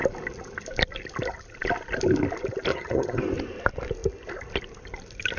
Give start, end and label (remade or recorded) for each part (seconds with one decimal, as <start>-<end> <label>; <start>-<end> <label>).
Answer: 0.0-2.7 recorded; 2.7-3.2 remade; 3.2-5.4 recorded